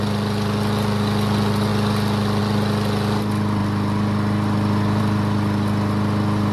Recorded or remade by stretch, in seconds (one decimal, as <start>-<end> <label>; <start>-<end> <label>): 0.0-6.5 recorded